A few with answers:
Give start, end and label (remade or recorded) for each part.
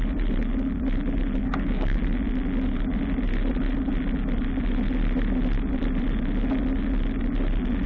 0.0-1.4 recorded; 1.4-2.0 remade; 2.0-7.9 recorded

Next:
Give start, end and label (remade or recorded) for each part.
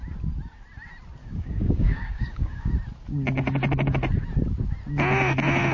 0.0-1.2 recorded; 1.2-2.7 remade; 2.7-5.7 recorded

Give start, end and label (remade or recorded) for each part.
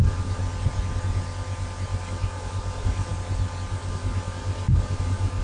0.0-0.4 remade; 0.4-2.0 recorded; 2.0-3.1 remade; 3.1-3.7 recorded; 3.7-5.4 remade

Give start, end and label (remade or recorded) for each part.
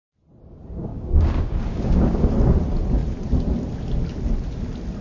0.0-0.9 recorded; 0.9-2.3 remade; 2.3-5.0 recorded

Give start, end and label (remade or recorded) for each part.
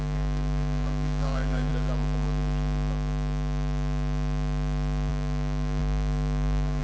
0.0-1.7 remade; 1.7-5.1 recorded; 5.1-6.8 remade